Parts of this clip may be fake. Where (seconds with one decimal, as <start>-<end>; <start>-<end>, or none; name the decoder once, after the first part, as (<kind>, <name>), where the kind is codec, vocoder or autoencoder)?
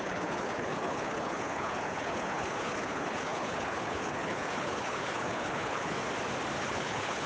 0.0-6.0 (codec, HILCodec); 6.6-7.3